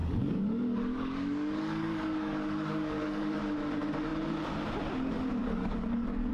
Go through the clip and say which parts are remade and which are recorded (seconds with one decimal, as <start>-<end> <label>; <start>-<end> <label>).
0.0-3.4 remade; 3.4-5.4 recorded; 5.4-6.3 remade